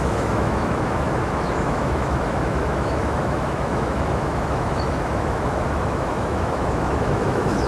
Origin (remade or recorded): remade